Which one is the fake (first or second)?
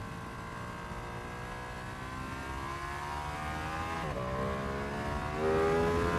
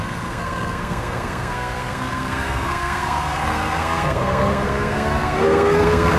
second